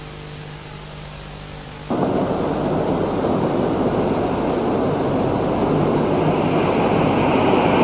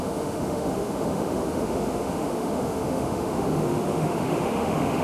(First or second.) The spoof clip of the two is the second